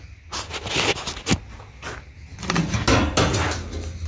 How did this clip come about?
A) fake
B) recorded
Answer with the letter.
B